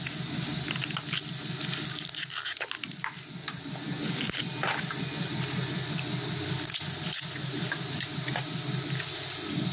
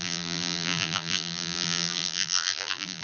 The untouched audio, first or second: first